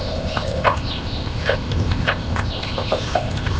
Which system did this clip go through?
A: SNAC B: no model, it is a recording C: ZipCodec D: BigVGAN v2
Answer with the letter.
C